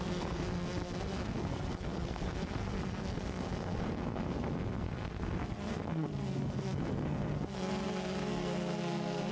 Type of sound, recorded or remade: remade